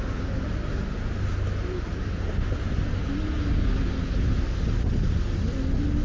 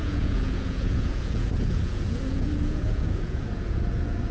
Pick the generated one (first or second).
second